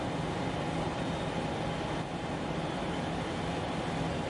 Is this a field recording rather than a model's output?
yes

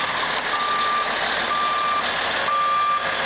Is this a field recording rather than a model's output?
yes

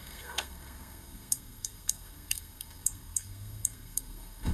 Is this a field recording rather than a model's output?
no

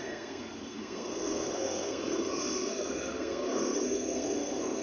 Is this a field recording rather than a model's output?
no